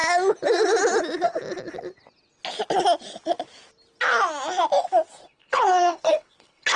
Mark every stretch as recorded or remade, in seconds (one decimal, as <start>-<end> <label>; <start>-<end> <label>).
0.0-5.2 recorded; 5.2-6.8 remade